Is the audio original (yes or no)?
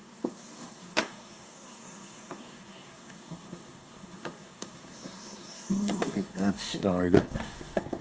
no